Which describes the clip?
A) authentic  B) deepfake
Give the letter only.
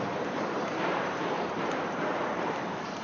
B